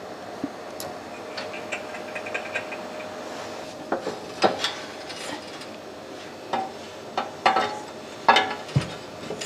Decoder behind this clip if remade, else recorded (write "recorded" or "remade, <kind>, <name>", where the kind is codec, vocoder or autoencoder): recorded